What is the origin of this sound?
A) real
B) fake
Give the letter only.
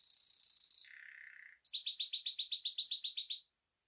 A